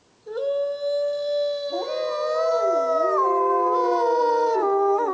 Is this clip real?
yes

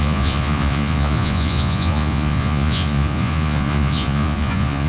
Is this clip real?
no